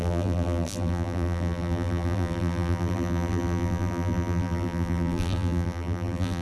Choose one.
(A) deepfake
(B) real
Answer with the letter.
A